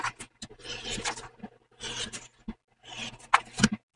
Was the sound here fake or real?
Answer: real